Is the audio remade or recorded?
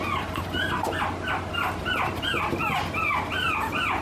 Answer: recorded